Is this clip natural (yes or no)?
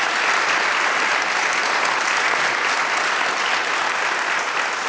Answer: yes